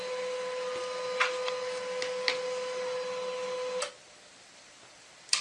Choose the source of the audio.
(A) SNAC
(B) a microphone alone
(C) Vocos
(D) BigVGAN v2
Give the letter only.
B